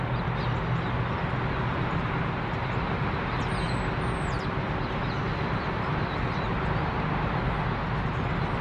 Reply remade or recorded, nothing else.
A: recorded